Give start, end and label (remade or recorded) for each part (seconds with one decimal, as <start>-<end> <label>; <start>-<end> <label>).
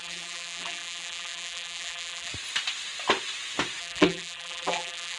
0.0-2.3 remade; 2.3-3.8 recorded; 3.8-5.2 remade